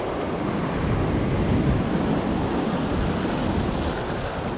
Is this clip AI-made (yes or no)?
no